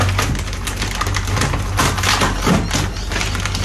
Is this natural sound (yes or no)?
yes